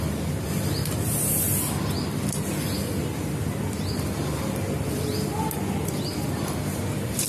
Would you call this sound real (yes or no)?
yes